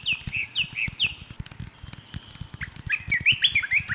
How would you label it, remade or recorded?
recorded